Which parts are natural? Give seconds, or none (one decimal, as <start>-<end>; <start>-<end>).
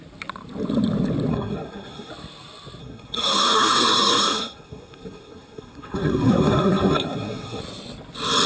0.0-1.3; 2.1-2.8; 7.6-8.5